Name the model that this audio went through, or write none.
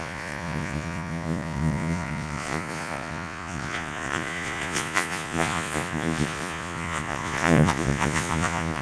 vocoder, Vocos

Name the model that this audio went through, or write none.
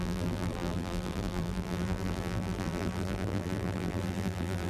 vocoder, BigVGAN v2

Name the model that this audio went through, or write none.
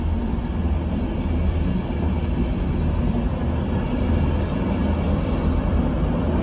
none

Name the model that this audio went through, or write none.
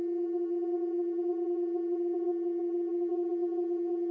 vocoder, Vocos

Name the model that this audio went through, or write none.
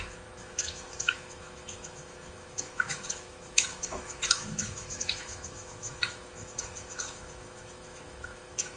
autoencoder, DAC-VAE